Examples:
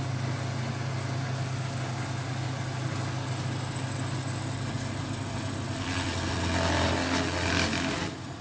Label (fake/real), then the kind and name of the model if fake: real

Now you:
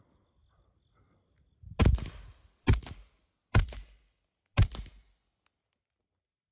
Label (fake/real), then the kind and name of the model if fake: real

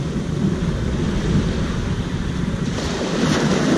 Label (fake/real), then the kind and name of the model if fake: fake, vocoder, BigVGAN v2